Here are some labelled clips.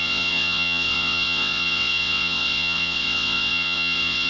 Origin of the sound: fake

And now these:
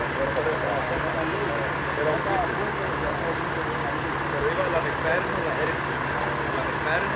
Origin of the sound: real